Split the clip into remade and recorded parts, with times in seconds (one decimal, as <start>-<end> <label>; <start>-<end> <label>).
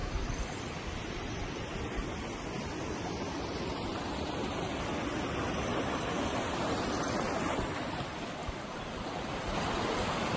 0.0-10.4 recorded